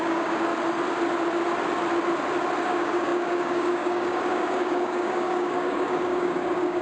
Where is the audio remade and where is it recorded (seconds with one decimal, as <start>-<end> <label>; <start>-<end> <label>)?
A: 0.0-0.5 remade; 0.5-2.6 recorded; 2.6-6.8 remade